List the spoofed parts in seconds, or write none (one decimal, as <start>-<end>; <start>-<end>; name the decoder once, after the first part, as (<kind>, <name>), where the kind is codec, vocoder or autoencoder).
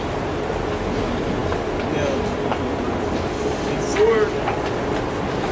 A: none